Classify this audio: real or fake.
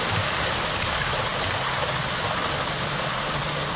real